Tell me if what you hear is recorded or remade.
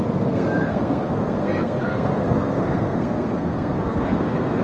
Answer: remade